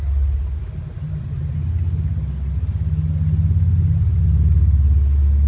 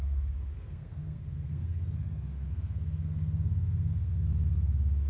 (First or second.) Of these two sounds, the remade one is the second